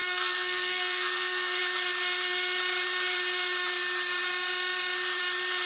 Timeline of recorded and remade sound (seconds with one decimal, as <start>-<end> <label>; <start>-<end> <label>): 0.0-1.6 remade; 1.6-5.7 recorded